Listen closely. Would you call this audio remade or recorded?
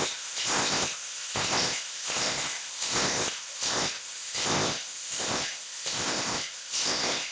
remade